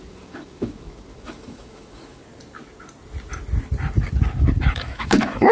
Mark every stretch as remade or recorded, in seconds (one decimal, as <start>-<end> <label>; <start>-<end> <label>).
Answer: 0.0-2.2 remade; 2.2-4.7 recorded; 4.7-5.5 remade